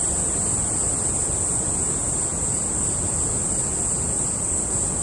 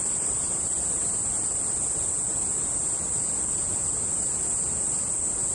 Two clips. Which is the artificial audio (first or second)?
second